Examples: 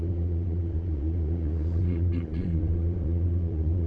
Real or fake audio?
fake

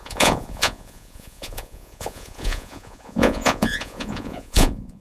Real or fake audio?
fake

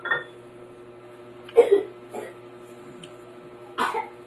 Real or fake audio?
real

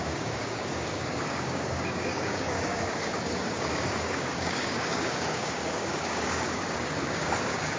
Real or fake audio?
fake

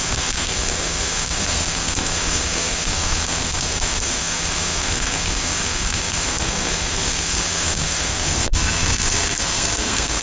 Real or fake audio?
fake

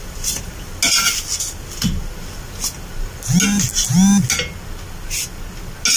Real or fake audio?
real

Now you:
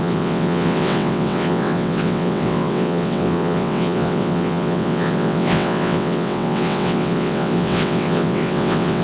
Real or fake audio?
fake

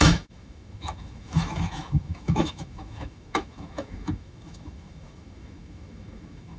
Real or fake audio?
fake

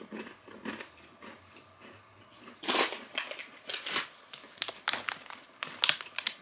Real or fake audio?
real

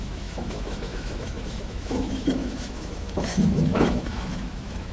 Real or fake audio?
fake